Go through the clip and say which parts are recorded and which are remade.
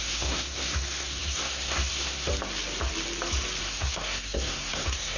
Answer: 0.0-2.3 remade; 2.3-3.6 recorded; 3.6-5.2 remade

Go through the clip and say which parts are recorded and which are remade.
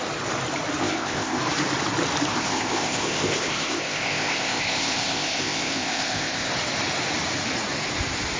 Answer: 0.0-0.8 recorded; 0.8-1.4 remade; 1.4-2.3 recorded; 2.3-6.5 remade; 6.5-8.4 recorded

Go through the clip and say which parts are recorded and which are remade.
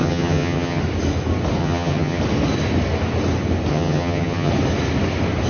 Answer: 0.0-0.8 remade; 0.8-1.6 recorded; 1.6-2.2 remade; 2.2-3.7 recorded; 3.7-4.5 remade; 4.5-5.5 recorded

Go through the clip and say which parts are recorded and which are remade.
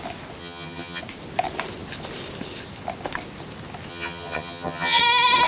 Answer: 0.0-0.4 recorded; 0.4-1.0 remade; 1.0-3.9 recorded; 3.9-5.0 remade; 5.0-5.5 recorded